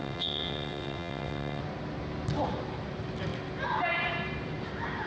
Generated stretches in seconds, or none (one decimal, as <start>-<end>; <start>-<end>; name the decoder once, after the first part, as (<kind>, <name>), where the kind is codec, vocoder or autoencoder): 0.0-1.6 (vocoder, WaveNeXt)